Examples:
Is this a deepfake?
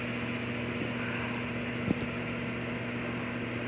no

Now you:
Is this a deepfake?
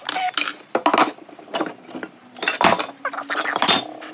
no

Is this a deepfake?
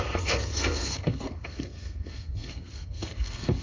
yes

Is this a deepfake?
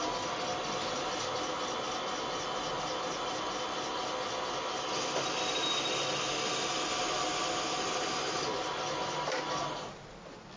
no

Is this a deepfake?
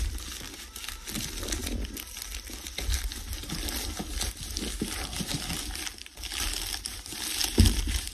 no